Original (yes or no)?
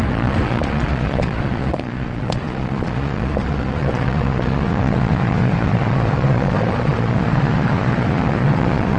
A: no